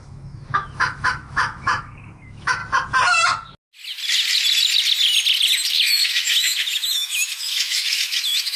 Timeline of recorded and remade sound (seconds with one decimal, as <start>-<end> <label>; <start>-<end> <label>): 0.0-2.6 remade; 2.6-5.7 recorded; 5.7-8.6 remade